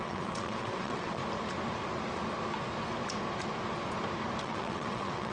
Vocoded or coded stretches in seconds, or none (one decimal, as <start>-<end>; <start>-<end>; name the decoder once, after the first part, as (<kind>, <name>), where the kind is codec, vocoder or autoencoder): 0.0-1.2 (vocoder, WaveNeXt); 4.4-5.3